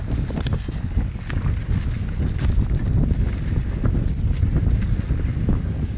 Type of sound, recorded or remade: recorded